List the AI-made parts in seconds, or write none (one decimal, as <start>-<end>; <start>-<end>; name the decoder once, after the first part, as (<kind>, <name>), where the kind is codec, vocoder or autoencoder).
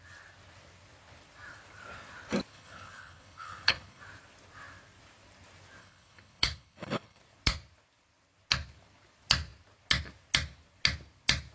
2.5-4.0 (codec, HILCodec); 5.8-7.2